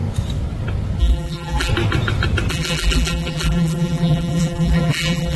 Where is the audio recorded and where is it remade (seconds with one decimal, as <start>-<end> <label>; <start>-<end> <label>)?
0.0-1.0 recorded; 1.0-1.7 remade; 1.7-2.5 recorded; 2.5-5.4 remade